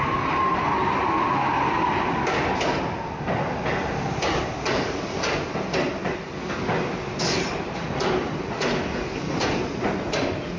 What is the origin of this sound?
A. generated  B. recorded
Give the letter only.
B